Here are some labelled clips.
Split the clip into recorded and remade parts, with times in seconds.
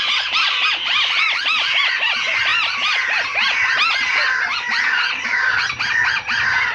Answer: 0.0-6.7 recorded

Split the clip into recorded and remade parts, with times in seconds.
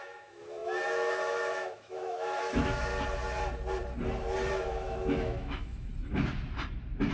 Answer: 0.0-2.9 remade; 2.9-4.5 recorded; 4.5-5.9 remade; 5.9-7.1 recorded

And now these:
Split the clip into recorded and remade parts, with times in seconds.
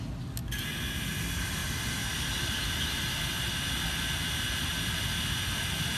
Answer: 0.0-6.0 recorded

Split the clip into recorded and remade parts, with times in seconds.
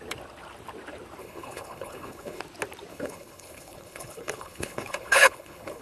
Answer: 0.0-1.2 recorded; 1.2-2.4 remade; 2.4-2.9 recorded; 2.9-5.8 remade